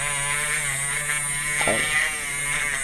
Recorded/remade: recorded